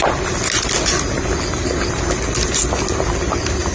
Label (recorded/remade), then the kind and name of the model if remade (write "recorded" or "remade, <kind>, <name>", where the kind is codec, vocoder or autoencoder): recorded